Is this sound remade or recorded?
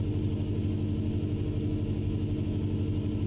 recorded